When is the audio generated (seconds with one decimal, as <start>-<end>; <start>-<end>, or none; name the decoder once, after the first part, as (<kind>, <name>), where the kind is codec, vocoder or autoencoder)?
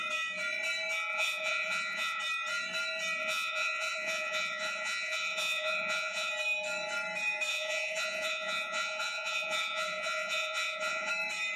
1.1-2.2 (vocoder, Vocos); 3.2-6.3; 7.5-11.1